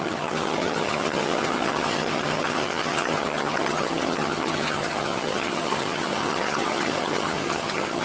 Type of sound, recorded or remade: remade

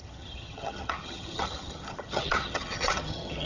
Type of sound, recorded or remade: remade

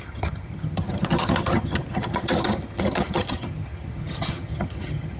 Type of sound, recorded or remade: remade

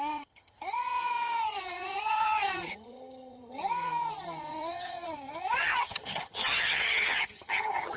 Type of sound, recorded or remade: remade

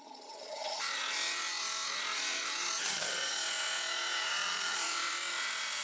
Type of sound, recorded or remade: remade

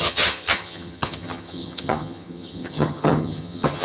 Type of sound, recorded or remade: remade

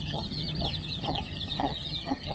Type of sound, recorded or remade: remade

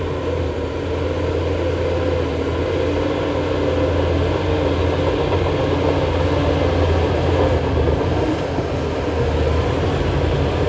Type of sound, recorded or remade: recorded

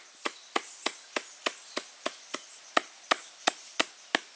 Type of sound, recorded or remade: recorded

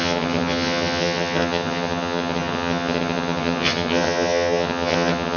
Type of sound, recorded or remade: remade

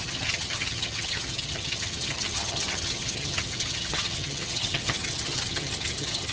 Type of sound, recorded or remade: remade